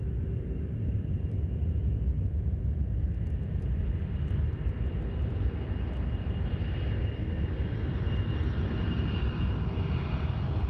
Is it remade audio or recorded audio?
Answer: recorded